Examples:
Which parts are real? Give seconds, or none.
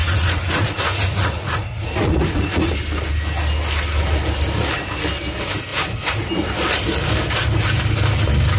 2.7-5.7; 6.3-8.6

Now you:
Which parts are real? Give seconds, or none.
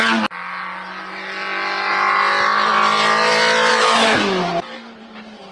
0.0-3.7; 4.5-5.5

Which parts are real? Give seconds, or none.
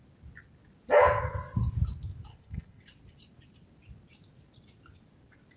0.0-2.3; 2.8-5.6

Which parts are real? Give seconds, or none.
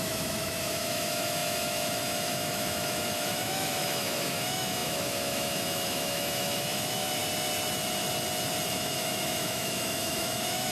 7.2-8.7